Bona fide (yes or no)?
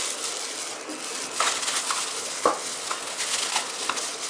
yes